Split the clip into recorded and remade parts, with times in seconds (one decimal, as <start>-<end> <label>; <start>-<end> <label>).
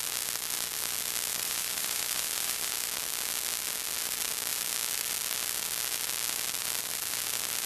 0.0-1.3 recorded; 1.3-2.7 remade; 2.7-7.7 recorded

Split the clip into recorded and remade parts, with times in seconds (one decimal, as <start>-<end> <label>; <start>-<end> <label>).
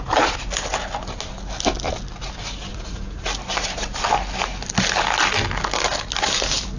0.0-2.7 recorded; 2.7-3.3 remade; 3.3-6.8 recorded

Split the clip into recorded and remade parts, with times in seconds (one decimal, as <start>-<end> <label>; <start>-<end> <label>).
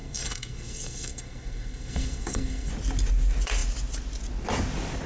0.0-2.7 remade; 2.7-5.1 recorded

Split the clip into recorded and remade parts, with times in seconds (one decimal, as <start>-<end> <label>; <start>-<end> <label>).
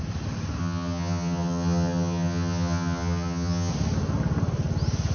0.0-0.6 recorded; 0.6-3.7 remade; 3.7-5.1 recorded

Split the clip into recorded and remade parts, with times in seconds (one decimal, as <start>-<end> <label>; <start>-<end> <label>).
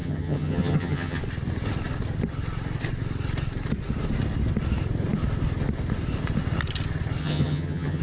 0.0-1.2 remade; 1.2-7.2 recorded; 7.2-8.0 remade